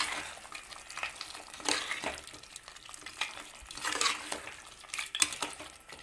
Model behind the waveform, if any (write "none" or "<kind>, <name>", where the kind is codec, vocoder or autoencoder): none